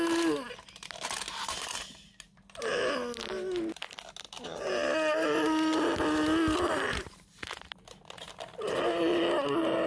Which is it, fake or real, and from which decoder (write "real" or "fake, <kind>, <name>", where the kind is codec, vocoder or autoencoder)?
real